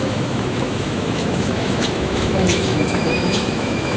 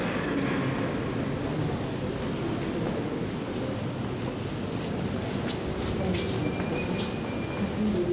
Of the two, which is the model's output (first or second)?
first